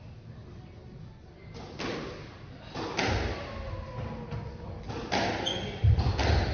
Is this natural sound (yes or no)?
yes